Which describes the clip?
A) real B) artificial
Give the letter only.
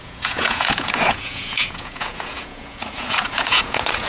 B